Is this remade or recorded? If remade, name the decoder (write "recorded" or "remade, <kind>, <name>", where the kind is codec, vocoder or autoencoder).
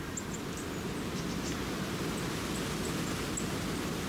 recorded